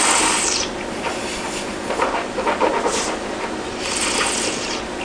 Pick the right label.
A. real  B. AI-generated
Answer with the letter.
A